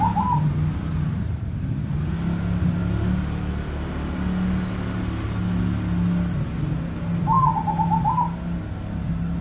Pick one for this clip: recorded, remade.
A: recorded